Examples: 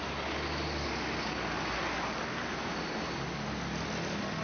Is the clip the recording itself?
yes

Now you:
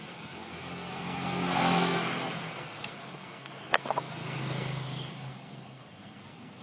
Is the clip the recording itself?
no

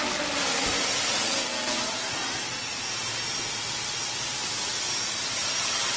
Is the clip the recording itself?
yes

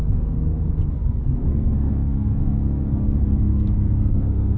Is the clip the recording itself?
no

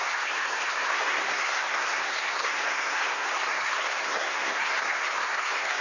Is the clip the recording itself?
no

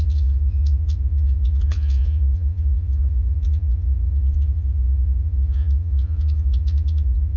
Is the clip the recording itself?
no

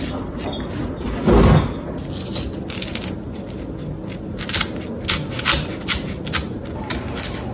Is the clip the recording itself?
yes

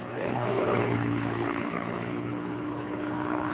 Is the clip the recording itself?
no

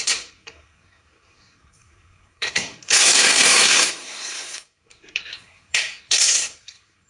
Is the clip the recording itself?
no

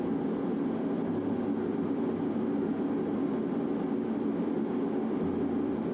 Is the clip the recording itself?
yes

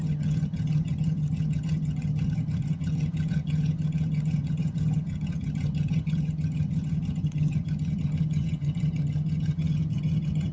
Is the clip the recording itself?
no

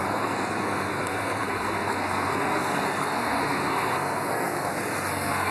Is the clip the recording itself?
no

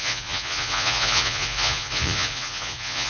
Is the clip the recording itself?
no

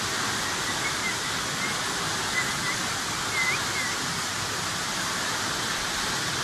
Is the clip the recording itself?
yes